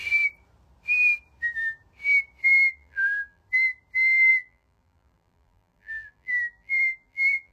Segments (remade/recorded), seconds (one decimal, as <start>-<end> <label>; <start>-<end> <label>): 0.0-2.7 recorded; 2.7-3.4 remade; 3.4-4.3 recorded; 4.3-7.5 remade